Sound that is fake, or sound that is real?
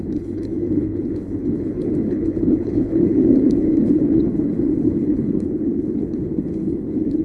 fake